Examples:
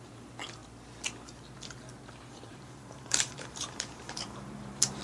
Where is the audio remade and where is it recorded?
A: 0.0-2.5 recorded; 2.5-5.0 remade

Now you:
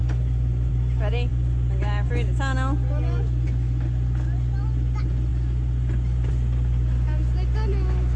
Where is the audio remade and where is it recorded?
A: 0.0-1.3 recorded; 1.3-2.1 remade; 2.1-5.3 recorded; 5.3-6.3 remade; 6.3-8.2 recorded